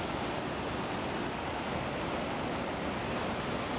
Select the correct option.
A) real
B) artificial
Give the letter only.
A